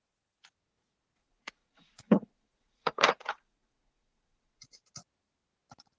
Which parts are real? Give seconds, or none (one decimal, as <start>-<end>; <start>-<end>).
0.0-1.2; 4.8-6.0